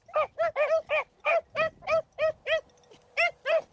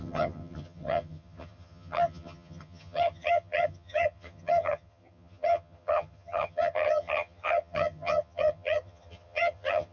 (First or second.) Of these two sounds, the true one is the first